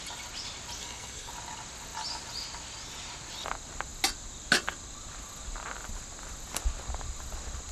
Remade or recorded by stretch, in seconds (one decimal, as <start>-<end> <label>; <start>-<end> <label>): 0.0-0.8 recorded; 0.8-1.3 remade; 1.3-7.7 recorded